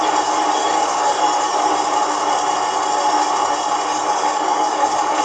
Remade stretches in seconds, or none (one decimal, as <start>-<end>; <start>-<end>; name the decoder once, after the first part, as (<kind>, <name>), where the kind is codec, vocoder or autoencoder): 0.6-1.7 (codec, DAC); 3.9-5.2